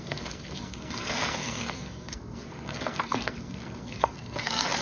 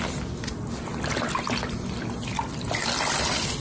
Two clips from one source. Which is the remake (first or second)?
first